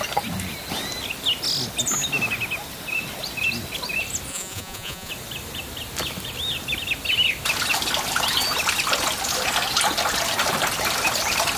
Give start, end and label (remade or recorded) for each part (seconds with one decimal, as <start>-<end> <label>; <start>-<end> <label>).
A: 0.0-4.3 recorded; 4.3-5.1 remade; 5.1-11.6 recorded